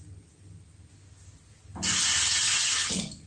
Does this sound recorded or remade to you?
recorded